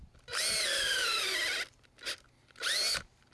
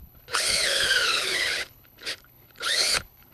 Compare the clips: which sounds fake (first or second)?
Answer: second